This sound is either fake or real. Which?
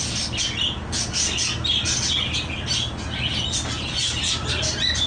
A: real